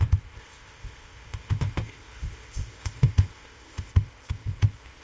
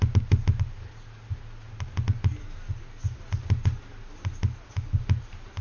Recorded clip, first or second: second